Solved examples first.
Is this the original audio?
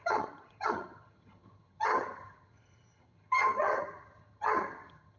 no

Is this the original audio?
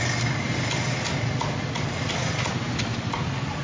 yes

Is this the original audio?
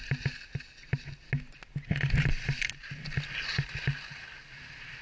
yes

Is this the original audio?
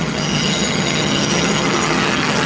no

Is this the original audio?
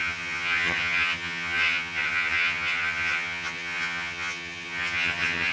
no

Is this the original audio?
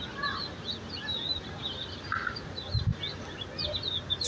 yes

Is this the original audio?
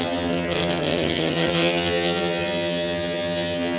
no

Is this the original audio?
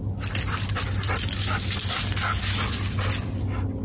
yes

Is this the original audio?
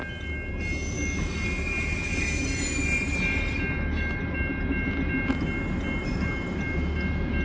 yes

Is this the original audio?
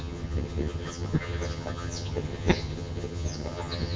no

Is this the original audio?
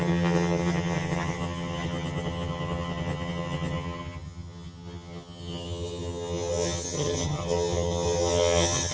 no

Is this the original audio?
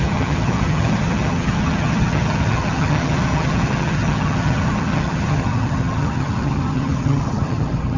no